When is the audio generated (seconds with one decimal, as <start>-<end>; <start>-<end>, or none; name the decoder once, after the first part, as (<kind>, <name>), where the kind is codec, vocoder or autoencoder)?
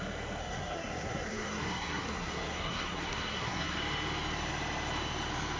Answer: 0.4-3.8 (codec, SNAC)